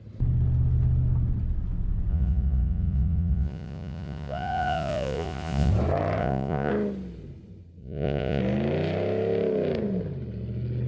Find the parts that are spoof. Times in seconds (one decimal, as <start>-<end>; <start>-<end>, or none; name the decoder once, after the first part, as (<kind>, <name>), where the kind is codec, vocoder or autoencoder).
2.1-5.7 (vocoder, Vocos); 6.2-6.7; 7.8-8.4